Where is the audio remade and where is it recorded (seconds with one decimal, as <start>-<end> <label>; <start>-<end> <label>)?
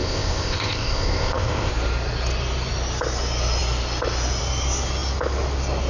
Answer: 0.0-1.7 remade; 1.7-5.9 recorded